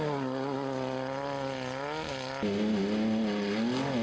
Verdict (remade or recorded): recorded